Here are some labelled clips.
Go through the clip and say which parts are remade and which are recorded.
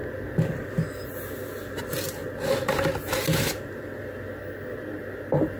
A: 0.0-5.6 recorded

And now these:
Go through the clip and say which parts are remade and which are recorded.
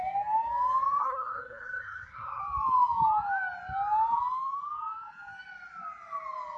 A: 0.0-1.0 recorded; 1.0-2.4 remade; 2.4-6.6 recorded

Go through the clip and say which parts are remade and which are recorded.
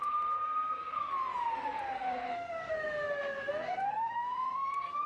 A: 0.0-1.1 remade; 1.1-1.8 recorded; 1.8-5.1 remade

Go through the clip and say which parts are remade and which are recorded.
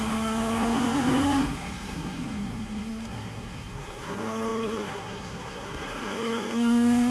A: 0.0-7.1 remade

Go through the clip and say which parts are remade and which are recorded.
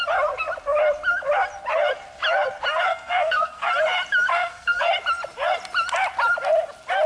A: 0.0-2.9 recorded; 2.9-3.7 remade; 3.7-4.3 recorded; 4.3-4.8 remade; 4.8-7.1 recorded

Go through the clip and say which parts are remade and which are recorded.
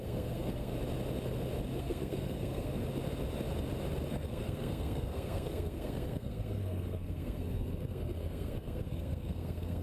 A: 0.0-0.7 remade; 0.7-1.8 recorded; 1.8-2.8 remade; 2.8-4.1 recorded; 4.1-9.8 remade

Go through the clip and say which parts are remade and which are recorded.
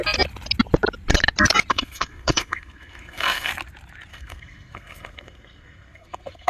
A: 0.0-1.7 recorded; 1.7-3.5 remade; 3.5-4.1 recorded; 4.1-6.5 remade